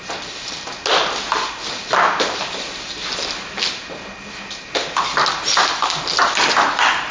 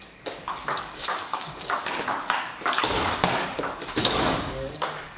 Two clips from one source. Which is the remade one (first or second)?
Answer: second